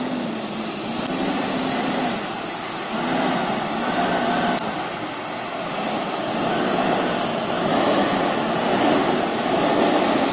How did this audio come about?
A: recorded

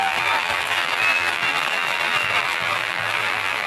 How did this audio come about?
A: remade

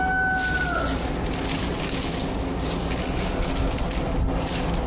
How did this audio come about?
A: recorded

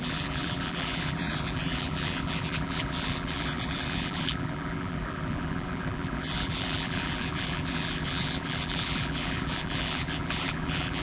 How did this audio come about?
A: remade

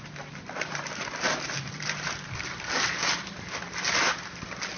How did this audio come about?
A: remade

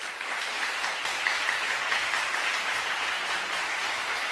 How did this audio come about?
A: remade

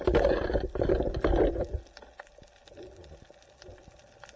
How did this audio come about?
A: recorded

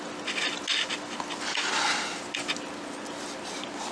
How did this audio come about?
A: recorded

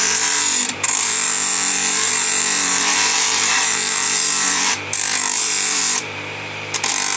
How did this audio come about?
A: remade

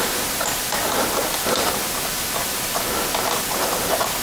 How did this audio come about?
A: recorded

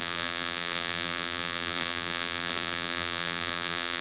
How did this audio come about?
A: remade